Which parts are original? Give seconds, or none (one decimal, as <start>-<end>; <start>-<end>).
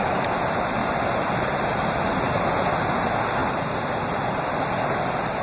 0.0-5.4